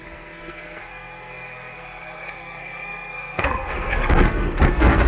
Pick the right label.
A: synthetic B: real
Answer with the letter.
A